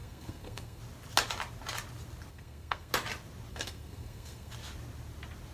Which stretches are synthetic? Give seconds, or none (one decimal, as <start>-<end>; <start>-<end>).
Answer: 0.0-0.8; 2.3-2.9; 3.5-4.5